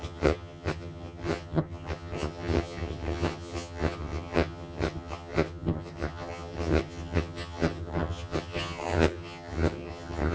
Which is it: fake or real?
fake